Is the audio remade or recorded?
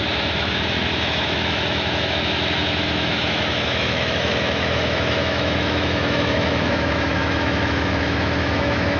remade